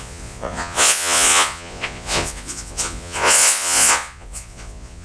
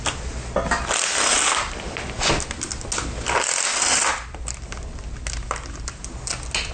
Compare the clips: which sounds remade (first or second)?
first